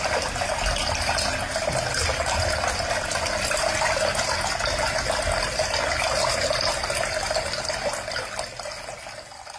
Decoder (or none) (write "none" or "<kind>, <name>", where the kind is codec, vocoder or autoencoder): none